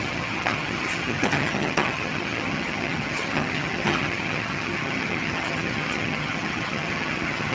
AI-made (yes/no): yes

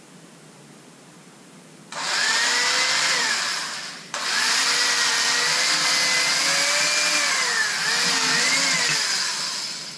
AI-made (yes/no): no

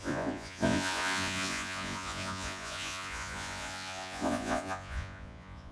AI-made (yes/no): yes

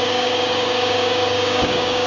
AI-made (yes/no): yes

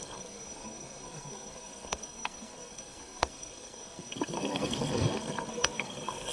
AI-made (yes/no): yes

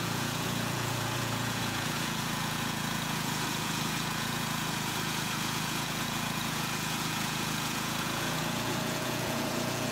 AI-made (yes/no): yes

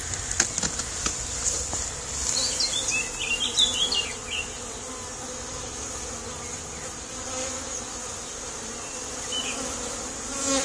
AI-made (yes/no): no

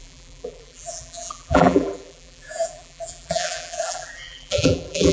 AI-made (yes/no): yes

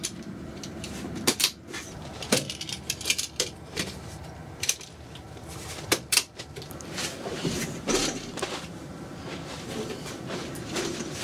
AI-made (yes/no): yes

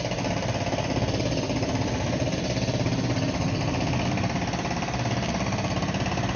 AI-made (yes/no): no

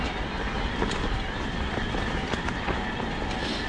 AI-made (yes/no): no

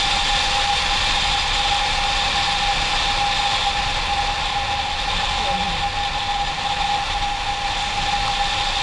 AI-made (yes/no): no